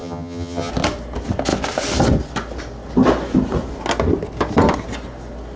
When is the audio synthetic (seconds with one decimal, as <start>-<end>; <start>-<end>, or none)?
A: 0.0-0.7